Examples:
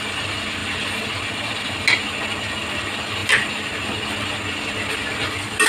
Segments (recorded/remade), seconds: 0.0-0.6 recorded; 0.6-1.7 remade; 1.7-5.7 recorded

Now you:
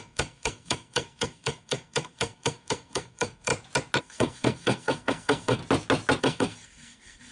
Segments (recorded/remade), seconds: 0.0-3.5 remade; 3.5-4.0 recorded; 4.0-5.6 remade; 5.6-6.2 recorded; 6.2-7.3 remade

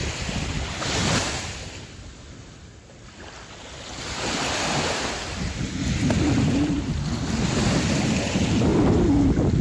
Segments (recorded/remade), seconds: 0.0-3.9 recorded; 3.9-5.6 remade; 5.6-9.6 recorded

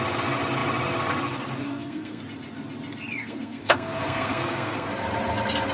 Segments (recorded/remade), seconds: 0.0-1.6 recorded; 1.6-2.2 remade; 2.2-3.2 recorded; 3.2-4.9 remade; 4.9-5.7 recorded

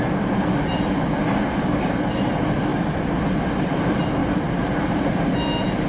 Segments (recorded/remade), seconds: 0.0-2.7 recorded; 2.7-3.2 remade; 3.2-4.2 recorded; 4.2-5.1 remade; 5.1-5.9 recorded

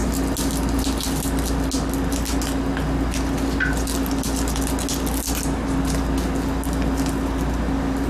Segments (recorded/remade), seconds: 0.0-8.1 recorded